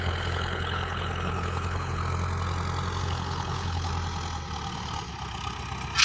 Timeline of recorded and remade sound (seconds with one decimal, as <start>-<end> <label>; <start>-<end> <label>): 0.0-2.0 remade; 2.0-3.0 recorded; 3.0-3.9 remade; 3.9-6.0 recorded